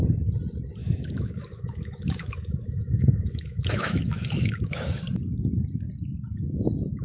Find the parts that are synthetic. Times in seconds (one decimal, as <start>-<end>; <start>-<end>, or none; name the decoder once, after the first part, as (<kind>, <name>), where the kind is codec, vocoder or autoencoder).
0.8-5.0 (autoencoder, DAC-VAE)